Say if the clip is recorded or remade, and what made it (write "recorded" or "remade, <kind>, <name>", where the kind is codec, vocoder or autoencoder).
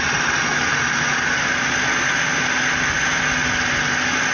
recorded